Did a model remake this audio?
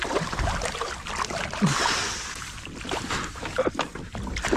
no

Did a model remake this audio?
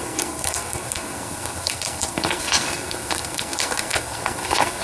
yes